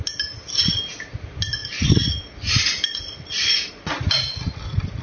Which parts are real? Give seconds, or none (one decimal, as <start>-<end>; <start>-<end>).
0.0-5.0